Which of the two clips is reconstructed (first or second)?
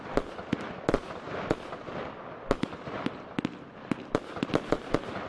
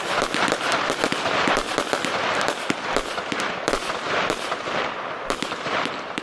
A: second